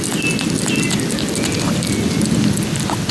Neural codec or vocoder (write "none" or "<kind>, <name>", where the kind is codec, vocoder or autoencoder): none